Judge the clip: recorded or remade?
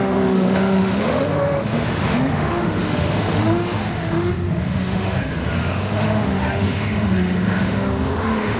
remade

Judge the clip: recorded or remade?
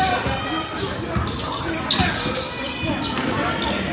recorded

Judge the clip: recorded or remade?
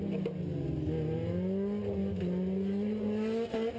recorded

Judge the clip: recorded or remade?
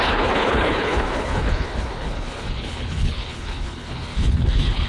remade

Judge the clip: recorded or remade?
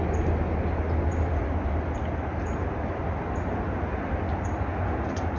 recorded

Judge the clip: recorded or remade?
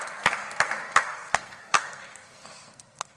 remade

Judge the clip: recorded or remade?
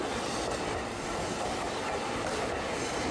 recorded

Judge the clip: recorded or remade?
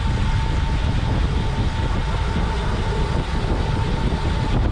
recorded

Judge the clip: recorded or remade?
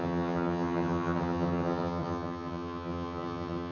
remade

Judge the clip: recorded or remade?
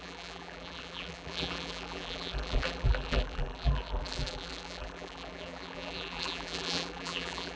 remade